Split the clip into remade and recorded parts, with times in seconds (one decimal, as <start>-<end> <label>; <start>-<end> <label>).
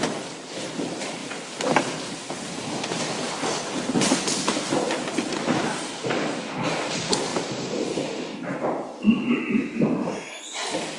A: 0.0-1.2 recorded; 1.2-1.8 remade; 1.8-7.3 recorded; 7.3-10.4 remade; 10.4-11.0 recorded